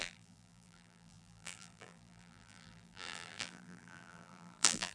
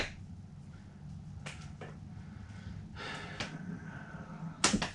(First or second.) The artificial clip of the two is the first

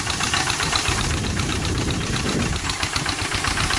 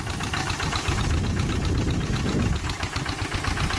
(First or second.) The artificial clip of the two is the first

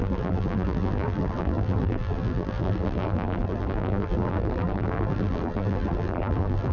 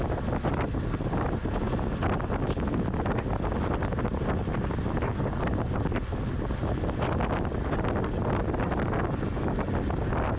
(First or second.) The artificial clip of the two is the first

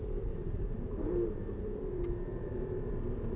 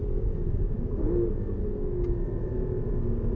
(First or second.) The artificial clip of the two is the first